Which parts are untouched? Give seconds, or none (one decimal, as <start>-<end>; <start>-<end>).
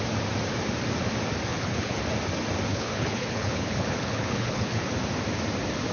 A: 0.0-1.5; 2.0-2.7; 4.9-5.9